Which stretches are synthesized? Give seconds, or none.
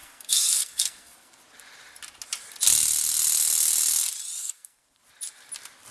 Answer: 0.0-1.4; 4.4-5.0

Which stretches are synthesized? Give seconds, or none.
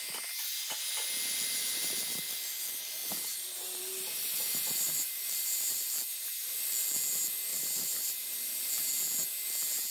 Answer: 3.0-5.7; 7.5-8.7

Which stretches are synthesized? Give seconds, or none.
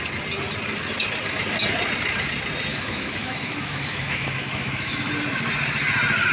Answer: 2.7-5.1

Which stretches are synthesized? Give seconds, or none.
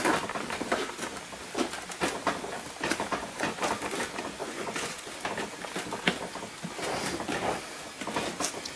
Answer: 3.2-3.7; 4.4-5.1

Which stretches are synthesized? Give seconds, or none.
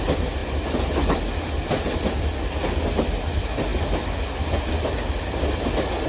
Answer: none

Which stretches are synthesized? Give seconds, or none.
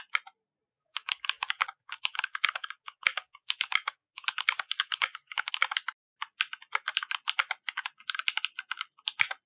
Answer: 0.7-5.5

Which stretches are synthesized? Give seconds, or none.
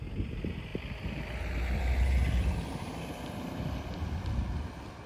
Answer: none